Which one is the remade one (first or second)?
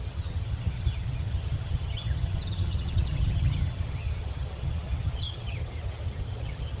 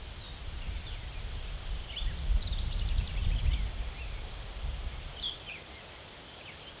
first